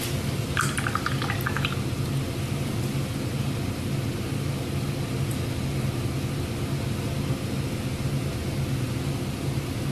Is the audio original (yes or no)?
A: yes